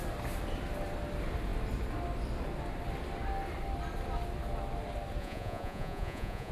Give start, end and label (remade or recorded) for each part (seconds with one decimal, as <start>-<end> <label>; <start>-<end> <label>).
0.0-5.2 recorded; 5.2-6.5 remade